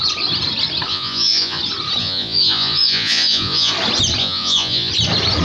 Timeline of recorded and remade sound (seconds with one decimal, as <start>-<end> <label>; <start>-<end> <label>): 0.0-0.9 recorded; 0.9-1.6 remade; 1.6-2.0 recorded; 2.0-3.7 remade; 3.7-4.2 recorded; 4.2-4.9 remade; 4.9-5.4 recorded